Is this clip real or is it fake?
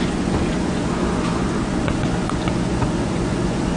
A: fake